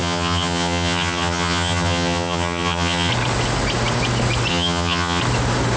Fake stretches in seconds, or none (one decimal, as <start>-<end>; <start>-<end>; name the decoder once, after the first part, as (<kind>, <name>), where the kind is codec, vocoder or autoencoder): 0.0-3.1 (vocoder, HiFi-GAN); 4.5-5.2